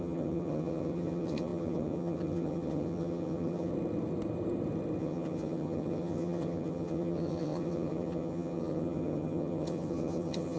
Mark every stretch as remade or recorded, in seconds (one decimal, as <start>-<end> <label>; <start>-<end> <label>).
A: 0.0-3.7 remade; 3.7-5.0 recorded; 5.0-10.6 remade